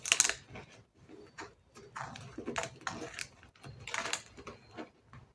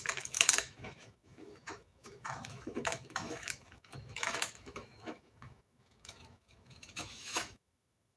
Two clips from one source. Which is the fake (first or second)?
second